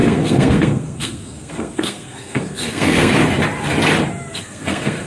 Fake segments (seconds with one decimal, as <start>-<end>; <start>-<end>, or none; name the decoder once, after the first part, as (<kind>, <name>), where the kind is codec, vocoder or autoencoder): 0.0-3.1 (codec, SNAC); 4.3-5.1